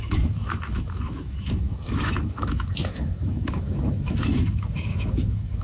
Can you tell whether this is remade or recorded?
remade